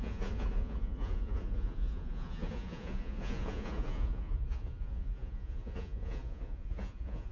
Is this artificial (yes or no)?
yes